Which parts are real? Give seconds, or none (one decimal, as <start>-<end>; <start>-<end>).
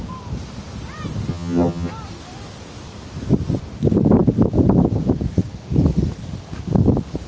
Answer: 0.0-1.3; 1.9-7.3